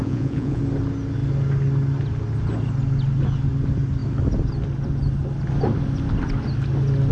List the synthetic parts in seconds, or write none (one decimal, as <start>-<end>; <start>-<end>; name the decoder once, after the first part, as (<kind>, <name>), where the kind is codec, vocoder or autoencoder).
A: 0.0-0.6 (vocoder, Vocos)